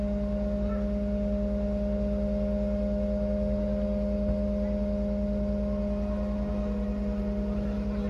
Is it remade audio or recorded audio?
recorded